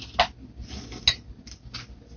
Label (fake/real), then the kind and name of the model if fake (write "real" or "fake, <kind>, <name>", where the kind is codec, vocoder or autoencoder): real